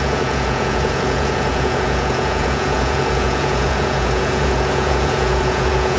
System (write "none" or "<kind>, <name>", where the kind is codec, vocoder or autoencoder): vocoder, Vocos